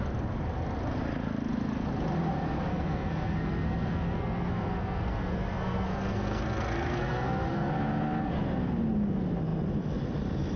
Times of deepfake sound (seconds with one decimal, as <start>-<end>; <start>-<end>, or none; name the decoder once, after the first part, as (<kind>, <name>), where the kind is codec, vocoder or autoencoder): 2.7-7.7 (codec, SNAC)

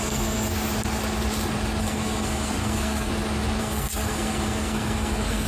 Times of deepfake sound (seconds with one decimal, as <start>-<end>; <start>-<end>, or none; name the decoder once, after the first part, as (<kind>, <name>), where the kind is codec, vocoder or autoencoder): 0.0-0.5 (codec, SNAC); 1.8-3.1; 3.6-5.5

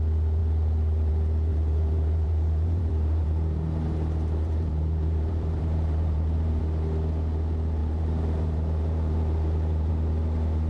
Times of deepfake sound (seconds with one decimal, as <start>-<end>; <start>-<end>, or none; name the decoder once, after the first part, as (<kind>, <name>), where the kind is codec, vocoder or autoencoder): 1.5-6.6 (vocoder, BigVGAN v2); 7.8-9.9